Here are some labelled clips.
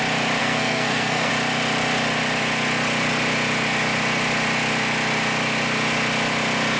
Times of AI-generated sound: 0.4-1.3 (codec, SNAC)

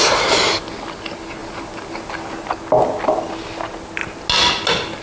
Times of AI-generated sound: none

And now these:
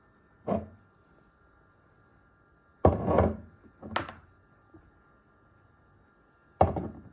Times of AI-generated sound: none